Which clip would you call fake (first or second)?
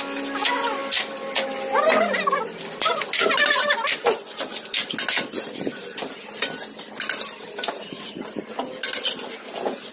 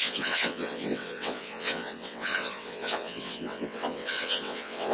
second